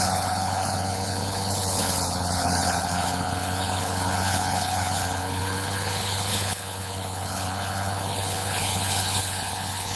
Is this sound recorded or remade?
remade